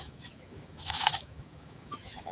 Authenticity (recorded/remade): remade